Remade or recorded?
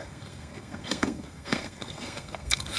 remade